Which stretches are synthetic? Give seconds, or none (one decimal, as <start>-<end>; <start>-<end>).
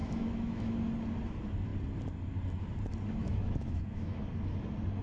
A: 0.0-0.7; 3.2-4.2